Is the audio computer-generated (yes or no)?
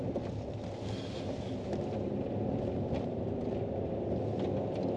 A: no